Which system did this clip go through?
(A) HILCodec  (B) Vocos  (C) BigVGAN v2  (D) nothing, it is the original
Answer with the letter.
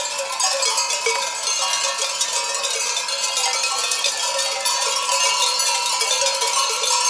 C